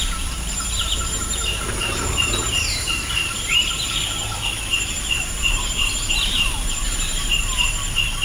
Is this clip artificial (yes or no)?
yes